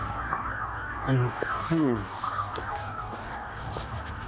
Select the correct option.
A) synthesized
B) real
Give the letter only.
A